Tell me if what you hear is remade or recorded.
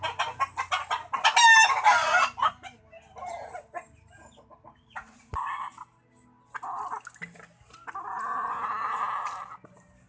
recorded